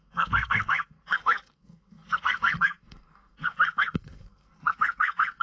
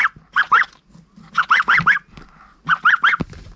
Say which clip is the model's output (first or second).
first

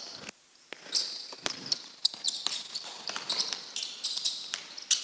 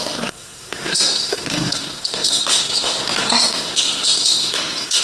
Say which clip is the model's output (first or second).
second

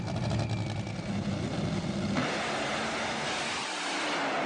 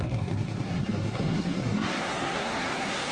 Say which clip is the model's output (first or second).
second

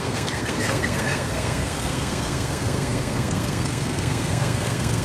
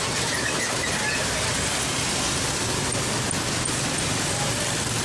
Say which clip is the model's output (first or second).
first